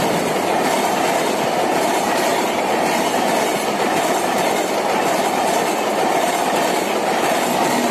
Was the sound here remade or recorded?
recorded